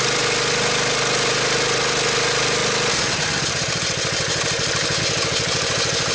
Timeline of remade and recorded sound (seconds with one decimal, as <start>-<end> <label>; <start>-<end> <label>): 0.0-6.1 recorded